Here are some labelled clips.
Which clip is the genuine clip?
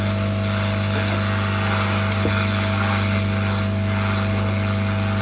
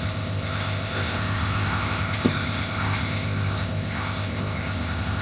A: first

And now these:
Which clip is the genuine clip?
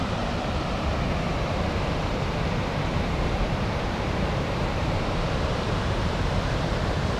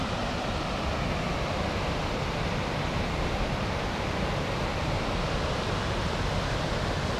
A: second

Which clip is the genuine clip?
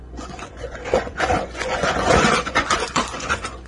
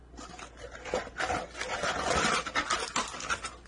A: second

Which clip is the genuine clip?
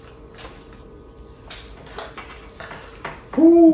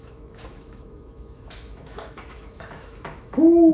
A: first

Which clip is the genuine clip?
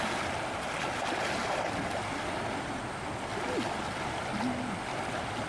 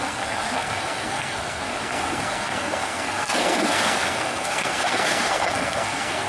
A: first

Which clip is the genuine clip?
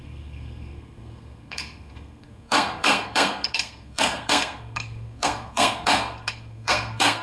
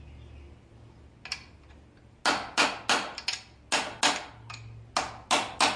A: second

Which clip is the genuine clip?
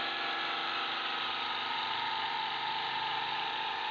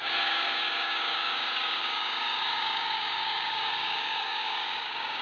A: first